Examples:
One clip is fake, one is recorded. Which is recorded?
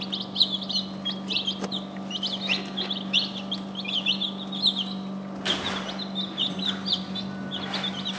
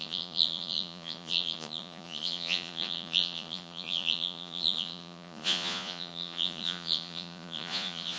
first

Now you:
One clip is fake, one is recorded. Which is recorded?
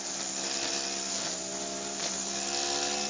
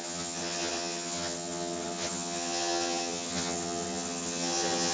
first